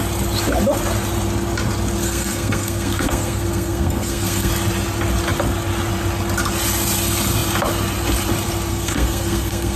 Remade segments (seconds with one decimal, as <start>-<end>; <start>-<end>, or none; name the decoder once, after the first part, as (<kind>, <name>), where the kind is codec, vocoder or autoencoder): 2.0-4.5 (codec, SNAC); 8.7-9.8